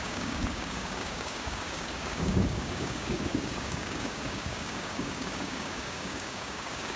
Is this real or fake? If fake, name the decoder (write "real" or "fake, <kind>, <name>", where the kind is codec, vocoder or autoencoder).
fake, codec, DAC